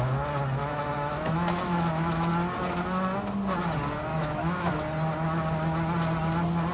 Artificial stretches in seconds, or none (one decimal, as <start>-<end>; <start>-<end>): 0.6-2.3; 4.1-4.7

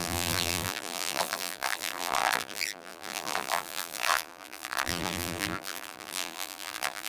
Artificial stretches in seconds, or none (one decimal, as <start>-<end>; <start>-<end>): 0.0-7.1

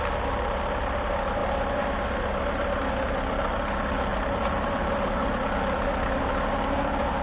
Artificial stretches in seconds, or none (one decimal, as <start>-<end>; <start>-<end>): 4.1-6.2

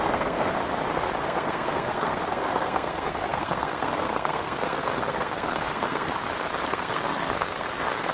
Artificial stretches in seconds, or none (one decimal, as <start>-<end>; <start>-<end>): 0.0-0.6; 1.2-6.2; 6.7-8.1

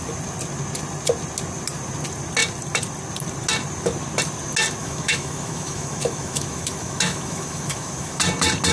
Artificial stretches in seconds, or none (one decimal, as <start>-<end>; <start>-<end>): 4.8-8.2

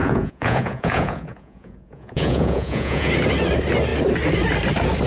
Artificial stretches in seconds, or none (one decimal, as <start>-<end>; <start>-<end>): 0.0-3.1

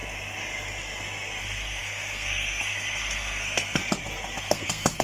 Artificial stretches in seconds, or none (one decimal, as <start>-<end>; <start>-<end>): 1.4-3.8; 4.4-5.0